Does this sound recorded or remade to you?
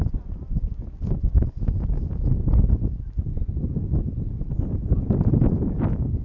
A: recorded